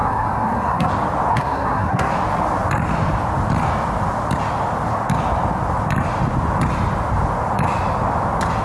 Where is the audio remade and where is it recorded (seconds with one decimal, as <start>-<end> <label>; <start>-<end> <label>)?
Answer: 0.0-0.9 remade; 0.9-1.3 recorded; 1.3-2.1 remade; 2.1-8.6 recorded

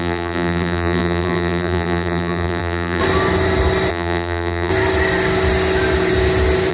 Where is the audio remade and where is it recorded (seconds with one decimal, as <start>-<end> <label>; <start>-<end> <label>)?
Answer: 0.0-3.0 remade; 3.0-3.9 recorded; 3.9-4.7 remade; 4.7-6.7 recorded

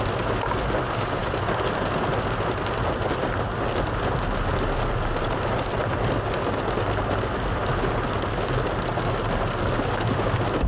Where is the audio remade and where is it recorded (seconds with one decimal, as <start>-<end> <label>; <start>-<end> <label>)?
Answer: 0.0-10.7 recorded

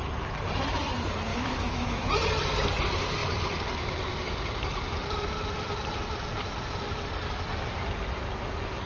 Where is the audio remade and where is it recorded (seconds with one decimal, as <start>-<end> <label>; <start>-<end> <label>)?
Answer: 0.0-1.3 recorded; 1.3-2.1 remade; 2.1-8.9 recorded